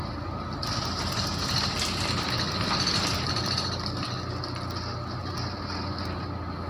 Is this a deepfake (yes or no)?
no